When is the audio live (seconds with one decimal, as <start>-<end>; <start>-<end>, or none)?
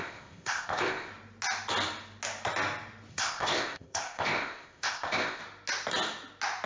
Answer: 1.1-3.1; 5.4-6.7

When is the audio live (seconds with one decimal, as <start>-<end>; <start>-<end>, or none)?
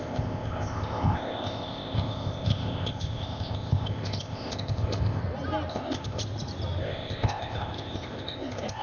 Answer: 5.2-5.7; 6.2-6.8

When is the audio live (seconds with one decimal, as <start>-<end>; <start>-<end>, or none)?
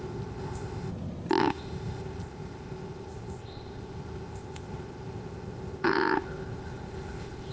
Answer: 0.9-1.4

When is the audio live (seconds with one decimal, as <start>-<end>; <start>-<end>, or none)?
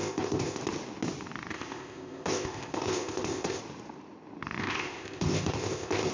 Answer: 0.6-1.5; 3.6-4.6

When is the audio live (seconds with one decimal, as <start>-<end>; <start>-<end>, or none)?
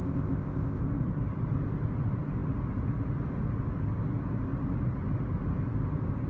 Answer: 0.8-6.3